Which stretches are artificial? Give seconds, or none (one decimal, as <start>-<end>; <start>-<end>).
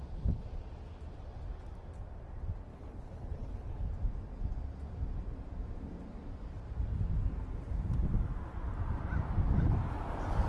2.7-3.8